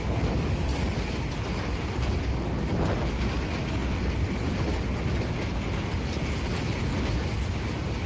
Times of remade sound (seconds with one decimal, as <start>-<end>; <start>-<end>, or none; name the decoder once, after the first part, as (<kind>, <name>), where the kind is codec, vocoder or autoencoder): none

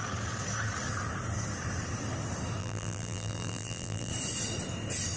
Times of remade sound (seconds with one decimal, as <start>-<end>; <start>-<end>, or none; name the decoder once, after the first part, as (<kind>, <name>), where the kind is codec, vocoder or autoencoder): 2.6-4.1 (vocoder, BigVGAN v2)